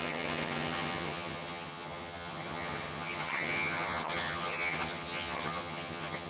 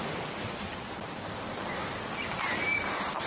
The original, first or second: second